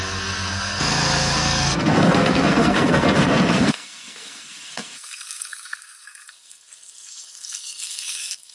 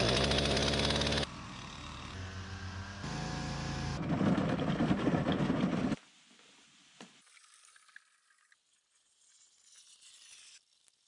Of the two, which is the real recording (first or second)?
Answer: second